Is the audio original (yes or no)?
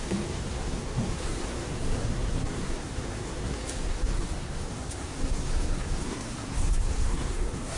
no